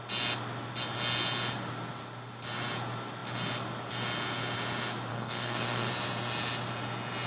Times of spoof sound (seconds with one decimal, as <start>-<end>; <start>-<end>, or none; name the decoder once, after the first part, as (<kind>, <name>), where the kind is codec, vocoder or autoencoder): 5.1-5.9 (codec, SNAC)